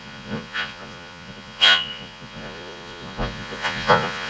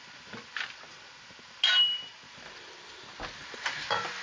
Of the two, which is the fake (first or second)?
first